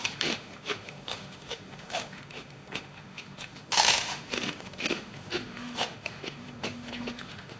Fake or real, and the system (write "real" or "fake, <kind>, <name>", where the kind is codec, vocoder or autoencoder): fake, autoencoder, DAC-VAE